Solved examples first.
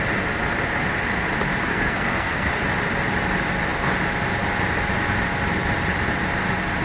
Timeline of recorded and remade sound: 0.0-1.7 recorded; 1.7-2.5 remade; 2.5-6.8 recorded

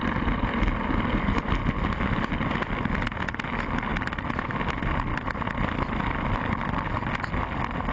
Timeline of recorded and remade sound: 0.0-7.9 recorded

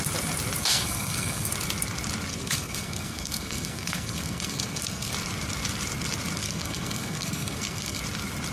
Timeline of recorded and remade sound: 0.0-0.6 recorded; 0.6-1.5 remade; 1.5-2.3 recorded; 2.3-5.1 remade; 5.1-6.4 recorded; 6.4-8.0 remade; 8.0-8.5 recorded